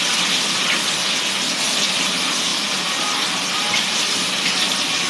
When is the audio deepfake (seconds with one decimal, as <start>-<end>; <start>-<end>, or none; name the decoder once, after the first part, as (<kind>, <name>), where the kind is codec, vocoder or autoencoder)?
none